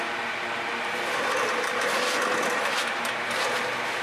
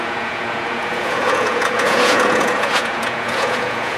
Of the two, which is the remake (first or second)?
second